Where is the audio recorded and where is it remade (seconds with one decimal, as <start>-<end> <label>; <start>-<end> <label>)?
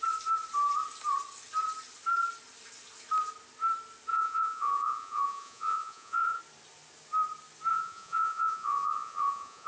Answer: 0.0-4.1 recorded; 4.1-6.4 remade; 6.4-7.7 recorded; 7.7-9.7 remade